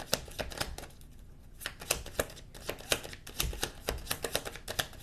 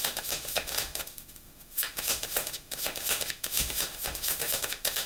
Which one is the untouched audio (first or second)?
first